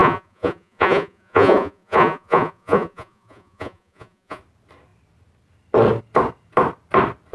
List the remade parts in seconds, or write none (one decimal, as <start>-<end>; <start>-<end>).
0.0-4.4